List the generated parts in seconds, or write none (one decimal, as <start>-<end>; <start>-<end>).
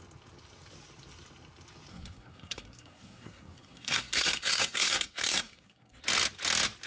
1.9-6.0